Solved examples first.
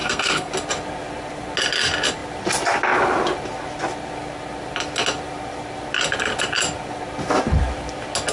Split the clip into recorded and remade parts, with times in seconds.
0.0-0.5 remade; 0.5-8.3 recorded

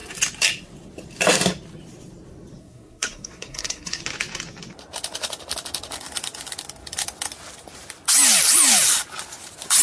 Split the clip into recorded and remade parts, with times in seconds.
0.0-2.6 recorded; 2.6-4.0 remade; 4.0-9.8 recorded

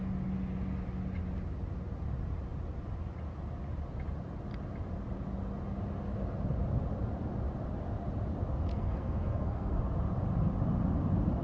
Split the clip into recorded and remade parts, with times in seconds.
0.0-8.7 recorded; 8.7-9.8 remade; 9.8-11.4 recorded